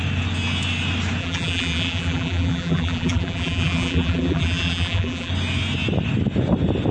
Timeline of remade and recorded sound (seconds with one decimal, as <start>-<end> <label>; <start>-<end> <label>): 0.0-1.2 recorded; 1.2-5.3 remade; 5.3-6.9 recorded